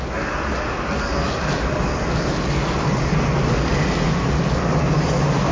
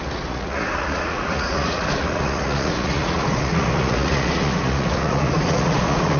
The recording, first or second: first